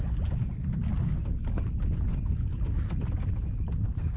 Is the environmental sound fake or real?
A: real